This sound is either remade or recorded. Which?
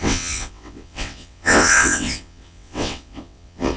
remade